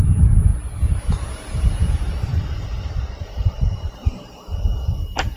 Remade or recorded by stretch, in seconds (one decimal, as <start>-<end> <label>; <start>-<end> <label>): 0.0-2.3 recorded; 2.3-4.3 remade; 4.3-5.4 recorded

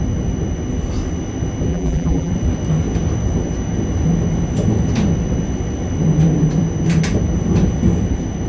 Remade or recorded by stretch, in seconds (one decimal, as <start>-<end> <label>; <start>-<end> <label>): 0.0-1.7 recorded; 1.7-2.3 remade; 2.3-8.5 recorded

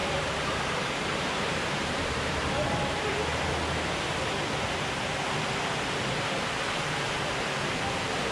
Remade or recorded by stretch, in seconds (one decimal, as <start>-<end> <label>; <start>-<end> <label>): 0.0-2.5 remade; 2.5-8.3 recorded